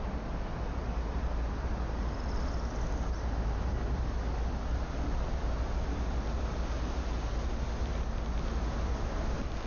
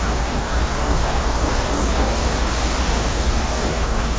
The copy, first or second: second